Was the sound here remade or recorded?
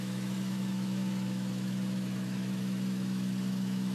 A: remade